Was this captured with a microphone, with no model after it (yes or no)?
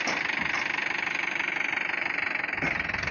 yes